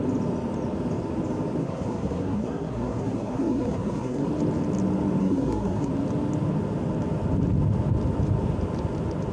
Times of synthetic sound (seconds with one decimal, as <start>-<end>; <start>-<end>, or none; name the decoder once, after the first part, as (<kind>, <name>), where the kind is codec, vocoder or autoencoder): 1.6-4.3 (codec, SNAC); 5.2-5.9